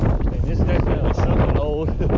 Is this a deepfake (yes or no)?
no